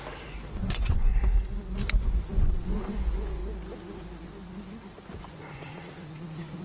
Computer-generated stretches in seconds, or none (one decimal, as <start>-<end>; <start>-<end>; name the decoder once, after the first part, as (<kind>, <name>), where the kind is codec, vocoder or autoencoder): 0.6-1.1 (vocoder, Vocos); 2.2-3.4; 5.2-6.6